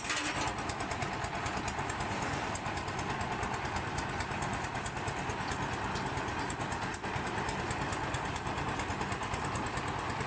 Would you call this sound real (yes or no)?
yes